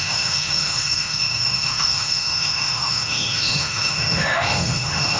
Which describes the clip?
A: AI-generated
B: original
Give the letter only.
A